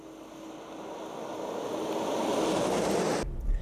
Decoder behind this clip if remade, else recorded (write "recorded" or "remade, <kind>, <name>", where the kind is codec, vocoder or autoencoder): recorded